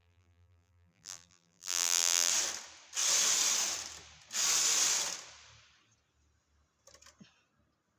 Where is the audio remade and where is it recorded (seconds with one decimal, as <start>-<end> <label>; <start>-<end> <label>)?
0.0-2.3 remade; 2.3-8.0 recorded